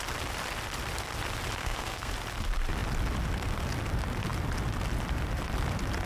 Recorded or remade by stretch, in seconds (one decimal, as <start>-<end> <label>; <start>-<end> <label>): 0.0-1.6 recorded; 1.6-2.1 remade; 2.1-6.1 recorded